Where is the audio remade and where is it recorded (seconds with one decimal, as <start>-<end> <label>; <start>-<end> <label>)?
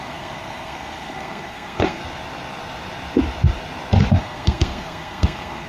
0.0-2.0 remade; 2.0-4.2 recorded; 4.2-5.7 remade